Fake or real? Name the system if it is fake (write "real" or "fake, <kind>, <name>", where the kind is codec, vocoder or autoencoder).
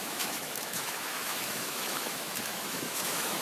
fake, autoencoder, DAC-VAE